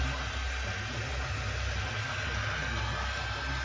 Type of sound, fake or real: real